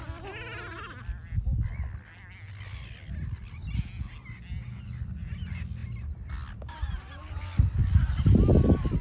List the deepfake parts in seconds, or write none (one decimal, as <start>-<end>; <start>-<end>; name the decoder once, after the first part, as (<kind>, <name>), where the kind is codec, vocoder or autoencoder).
none